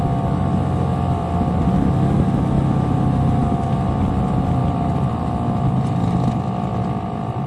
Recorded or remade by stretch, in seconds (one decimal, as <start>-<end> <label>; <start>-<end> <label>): 0.0-7.5 recorded